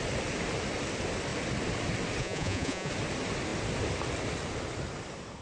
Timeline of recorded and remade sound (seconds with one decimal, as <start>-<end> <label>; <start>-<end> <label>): 0.0-2.2 recorded; 2.2-2.9 remade; 2.9-5.4 recorded